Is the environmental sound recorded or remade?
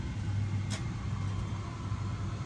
recorded